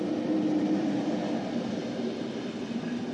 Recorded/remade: recorded